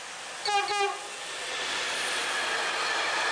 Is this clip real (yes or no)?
yes